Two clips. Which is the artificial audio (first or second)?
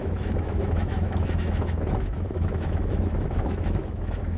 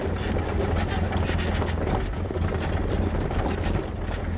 first